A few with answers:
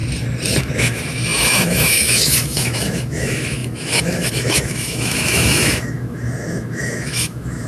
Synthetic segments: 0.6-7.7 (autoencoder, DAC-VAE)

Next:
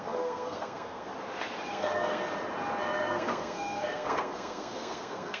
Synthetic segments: 0.0-1.1 (codec, SNAC); 1.7-2.2; 2.8-5.4

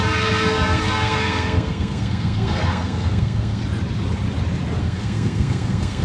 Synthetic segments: 0.0-3.6 (codec, SNAC); 4.8-6.0

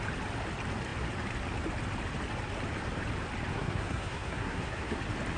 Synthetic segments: 3.5-5.0 (codec, SNAC)

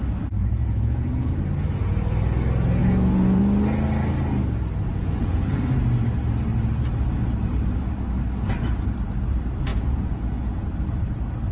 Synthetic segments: 0.4-1.3 (vocoder, Vocos); 2.8-3.4; 4.9-5.6; 9.7-10.7